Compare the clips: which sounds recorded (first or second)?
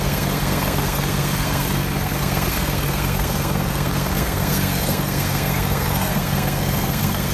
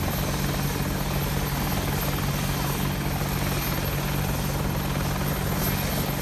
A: second